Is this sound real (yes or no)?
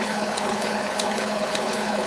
no